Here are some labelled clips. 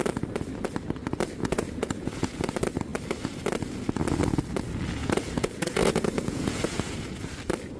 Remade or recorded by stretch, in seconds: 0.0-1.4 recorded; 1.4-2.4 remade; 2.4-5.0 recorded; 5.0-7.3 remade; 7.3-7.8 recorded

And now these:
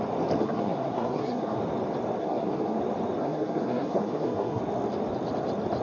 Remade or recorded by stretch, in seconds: 0.0-0.4 recorded; 0.4-1.6 remade; 1.6-2.2 recorded; 2.2-2.8 remade; 2.8-3.2 recorded; 3.2-4.6 remade; 4.6-5.8 recorded

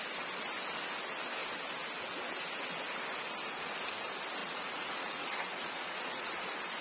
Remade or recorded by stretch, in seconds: 0.0-4.4 recorded; 4.4-6.3 remade; 6.3-6.8 recorded

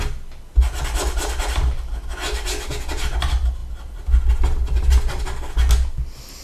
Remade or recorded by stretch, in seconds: 0.0-6.4 recorded

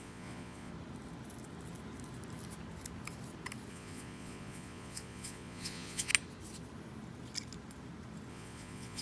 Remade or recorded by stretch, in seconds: 0.0-0.7 remade; 0.7-3.7 recorded; 3.7-6.1 remade; 6.1-8.3 recorded; 8.3-9.0 remade

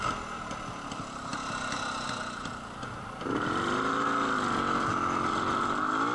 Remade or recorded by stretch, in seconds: 0.0-6.1 recorded